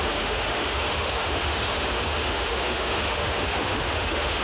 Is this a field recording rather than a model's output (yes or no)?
no